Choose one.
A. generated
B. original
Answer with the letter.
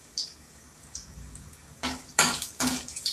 A